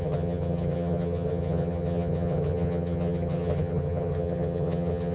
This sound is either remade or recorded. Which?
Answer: remade